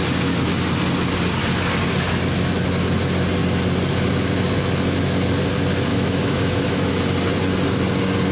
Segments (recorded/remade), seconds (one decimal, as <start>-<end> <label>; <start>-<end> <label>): 0.0-5.9 recorded; 5.9-6.9 remade; 6.9-8.3 recorded